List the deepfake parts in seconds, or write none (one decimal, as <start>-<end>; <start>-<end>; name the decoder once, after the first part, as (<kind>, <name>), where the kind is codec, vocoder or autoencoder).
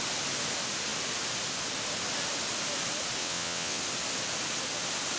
3.2-3.8 (vocoder, WaveNeXt)